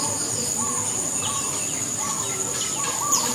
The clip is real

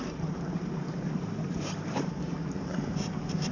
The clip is fake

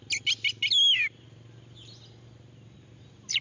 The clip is real